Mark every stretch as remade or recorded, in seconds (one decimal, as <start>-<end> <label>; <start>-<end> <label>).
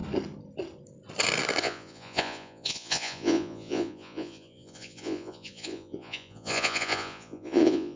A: 0.0-1.6 recorded; 1.6-8.0 remade